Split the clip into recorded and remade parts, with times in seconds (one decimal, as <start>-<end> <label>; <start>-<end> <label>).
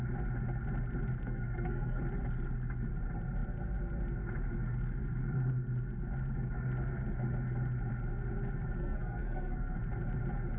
0.0-1.2 recorded; 1.2-2.0 remade; 2.0-8.8 recorded; 8.8-9.8 remade; 9.8-10.6 recorded